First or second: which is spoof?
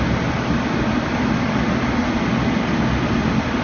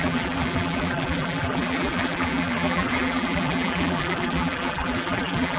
second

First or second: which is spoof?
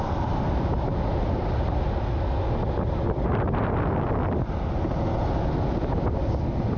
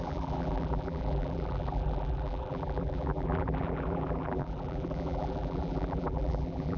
second